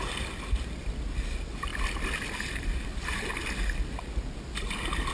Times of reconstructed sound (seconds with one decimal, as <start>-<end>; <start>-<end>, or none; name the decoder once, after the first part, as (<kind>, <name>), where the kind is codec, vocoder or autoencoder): none